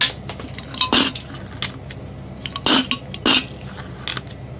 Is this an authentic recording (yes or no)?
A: yes